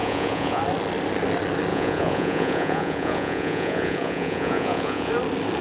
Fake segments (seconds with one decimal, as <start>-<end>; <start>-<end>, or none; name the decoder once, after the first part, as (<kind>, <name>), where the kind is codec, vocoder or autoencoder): 0.0-0.6 (vocoder, Vocos); 1.7-5.1